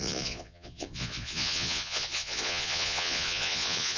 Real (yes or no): no